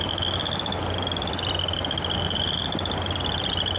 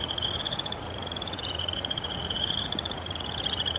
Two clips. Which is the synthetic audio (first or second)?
second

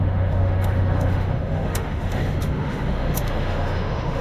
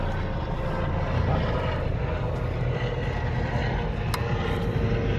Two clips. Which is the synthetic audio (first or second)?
first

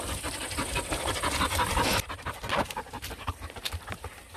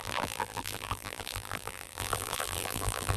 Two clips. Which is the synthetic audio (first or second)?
second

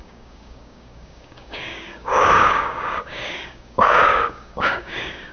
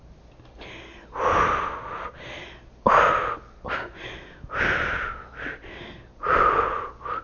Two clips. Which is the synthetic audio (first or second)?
first